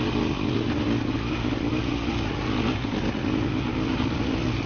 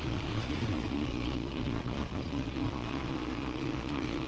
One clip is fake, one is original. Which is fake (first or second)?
second